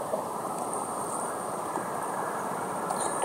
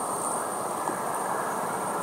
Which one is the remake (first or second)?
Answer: first